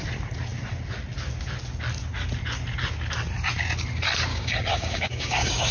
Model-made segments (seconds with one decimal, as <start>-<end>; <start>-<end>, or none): 4.3-5.7